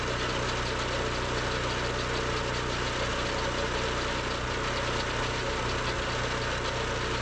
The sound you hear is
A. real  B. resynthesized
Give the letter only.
A